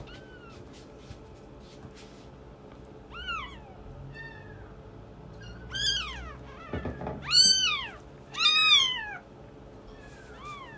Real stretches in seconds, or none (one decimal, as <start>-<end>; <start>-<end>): 0.0-10.8